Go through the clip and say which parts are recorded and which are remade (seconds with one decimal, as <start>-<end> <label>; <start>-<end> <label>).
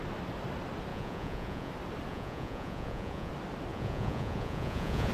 0.0-0.9 recorded; 0.9-1.7 remade; 1.7-2.1 recorded; 2.1-3.3 remade; 3.3-3.7 recorded; 3.7-5.1 remade